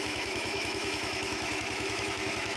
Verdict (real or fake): fake